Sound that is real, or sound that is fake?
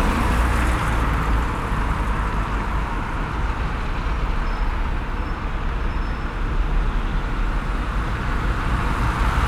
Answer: real